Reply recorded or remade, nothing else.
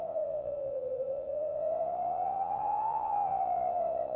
remade